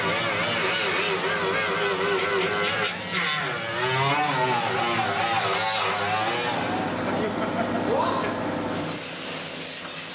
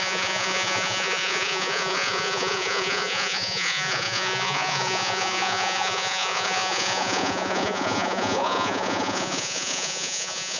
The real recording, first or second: first